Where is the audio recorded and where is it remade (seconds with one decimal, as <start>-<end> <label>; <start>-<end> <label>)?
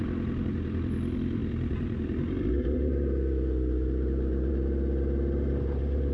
0.0-6.1 remade